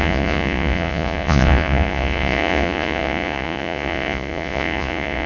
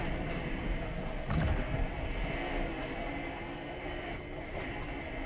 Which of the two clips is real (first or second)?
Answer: second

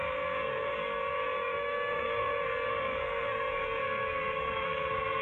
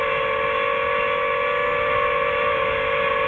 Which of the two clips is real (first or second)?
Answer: second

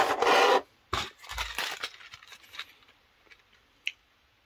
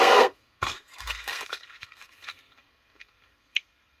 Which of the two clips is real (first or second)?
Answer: first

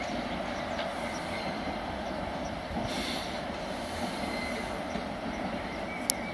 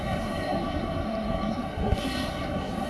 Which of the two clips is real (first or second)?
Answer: first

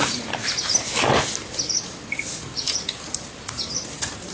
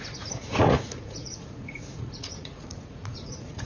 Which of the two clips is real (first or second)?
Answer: first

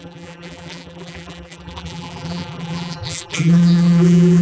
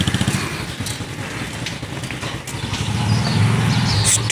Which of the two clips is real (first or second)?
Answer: second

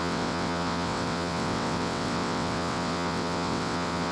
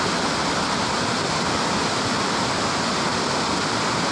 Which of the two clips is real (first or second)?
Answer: second